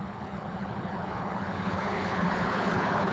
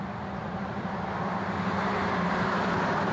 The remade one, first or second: first